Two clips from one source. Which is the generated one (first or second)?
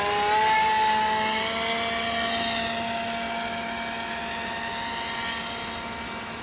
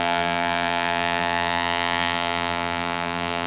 second